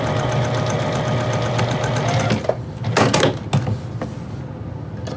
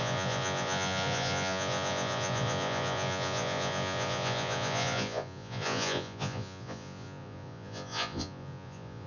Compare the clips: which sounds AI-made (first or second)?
second